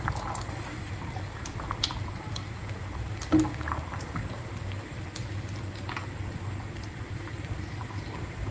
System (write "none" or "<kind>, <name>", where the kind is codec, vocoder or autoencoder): vocoder, BigVGAN v2